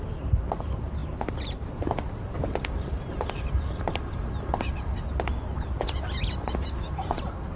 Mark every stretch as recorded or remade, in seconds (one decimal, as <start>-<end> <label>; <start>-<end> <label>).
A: 0.0-7.6 recorded